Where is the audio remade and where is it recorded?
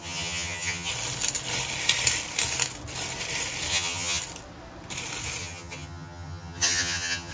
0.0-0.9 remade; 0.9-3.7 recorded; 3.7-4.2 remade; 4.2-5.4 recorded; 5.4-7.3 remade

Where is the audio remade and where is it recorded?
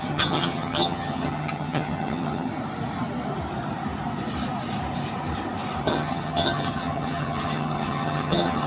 0.0-2.5 remade; 2.5-5.9 recorded; 5.9-8.7 remade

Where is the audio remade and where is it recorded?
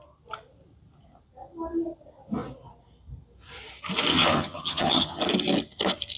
0.0-4.1 recorded; 4.1-5.2 remade; 5.2-6.2 recorded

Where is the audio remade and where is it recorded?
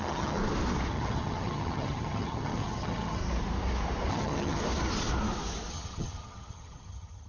0.0-0.4 remade; 0.4-0.9 recorded; 0.9-3.2 remade; 3.2-4.1 recorded; 4.1-4.6 remade; 4.6-5.7 recorded; 5.7-7.3 remade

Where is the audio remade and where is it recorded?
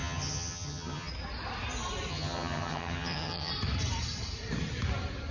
0.0-1.1 remade; 1.1-2.1 recorded; 2.1-3.5 remade; 3.5-5.3 recorded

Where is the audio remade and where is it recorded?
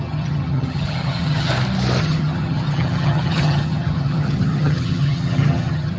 0.0-1.5 remade; 1.5-2.0 recorded; 2.0-6.0 remade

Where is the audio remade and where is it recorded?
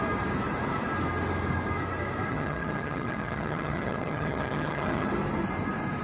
0.0-2.3 recorded; 2.3-5.1 remade; 5.1-6.0 recorded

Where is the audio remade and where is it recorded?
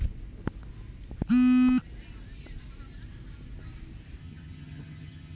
0.0-4.2 recorded; 4.2-5.4 remade